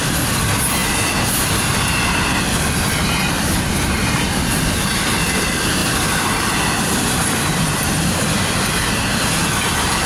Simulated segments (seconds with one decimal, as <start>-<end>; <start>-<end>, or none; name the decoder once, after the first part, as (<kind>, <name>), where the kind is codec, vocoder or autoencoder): 5.8-8.9 (vocoder, BigVGAN v2)